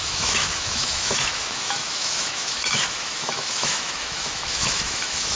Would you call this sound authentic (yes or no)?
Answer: no